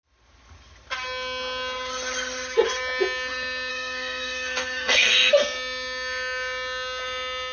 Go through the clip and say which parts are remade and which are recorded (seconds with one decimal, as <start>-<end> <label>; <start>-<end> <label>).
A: 0.0-3.7 recorded; 3.7-5.3 remade; 5.3-7.5 recorded